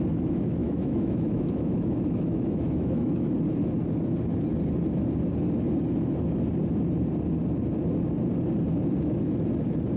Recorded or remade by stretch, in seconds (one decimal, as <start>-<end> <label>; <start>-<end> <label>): 0.0-0.6 recorded; 0.6-3.3 remade; 3.3-10.0 recorded